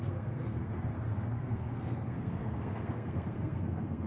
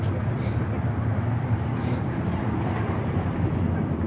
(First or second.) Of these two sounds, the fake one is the first